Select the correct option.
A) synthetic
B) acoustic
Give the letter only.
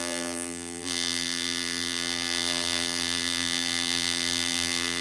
A